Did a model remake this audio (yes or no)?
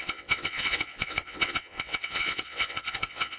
yes